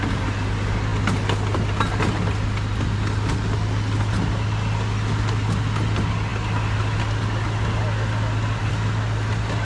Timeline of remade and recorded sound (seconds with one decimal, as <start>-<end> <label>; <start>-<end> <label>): 0.0-9.6 recorded